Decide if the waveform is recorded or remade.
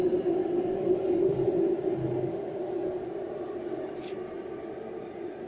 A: recorded